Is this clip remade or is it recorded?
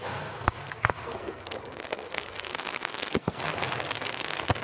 remade